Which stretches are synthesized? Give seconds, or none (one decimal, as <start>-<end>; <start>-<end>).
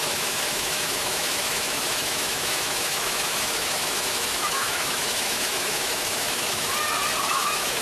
0.0-6.7; 7.3-7.8